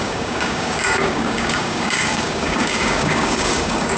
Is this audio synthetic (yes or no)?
yes